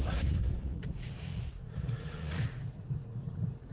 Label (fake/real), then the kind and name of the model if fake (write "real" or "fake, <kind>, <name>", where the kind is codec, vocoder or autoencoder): fake, vocoder, Vocos